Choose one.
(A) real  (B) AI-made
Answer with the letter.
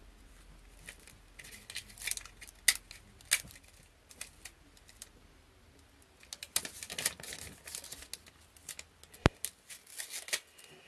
A